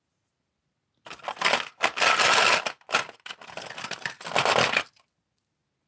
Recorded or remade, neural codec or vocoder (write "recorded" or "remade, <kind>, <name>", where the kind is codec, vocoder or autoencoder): recorded